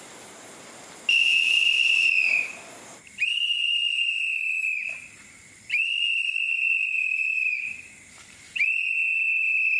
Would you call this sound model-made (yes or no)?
yes